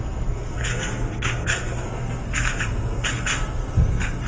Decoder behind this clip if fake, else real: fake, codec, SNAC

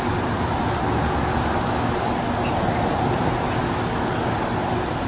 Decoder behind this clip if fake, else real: real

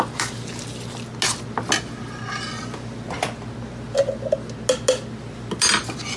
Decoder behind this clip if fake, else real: real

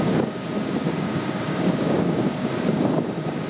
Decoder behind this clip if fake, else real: fake, codec, DAC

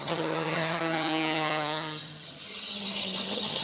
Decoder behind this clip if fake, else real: fake, vocoder, HiFi-GAN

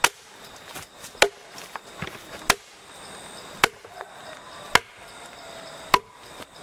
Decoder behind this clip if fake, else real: real